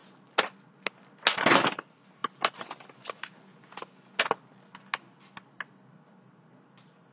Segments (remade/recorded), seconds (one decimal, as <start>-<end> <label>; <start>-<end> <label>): 0.0-7.1 recorded